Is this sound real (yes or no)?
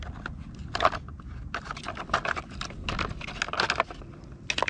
yes